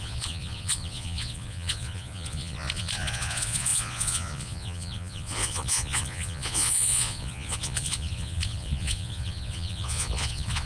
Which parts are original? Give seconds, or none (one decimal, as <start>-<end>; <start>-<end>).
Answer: none